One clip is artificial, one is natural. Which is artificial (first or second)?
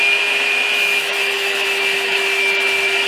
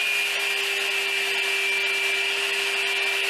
first